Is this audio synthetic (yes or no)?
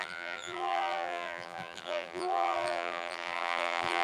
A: yes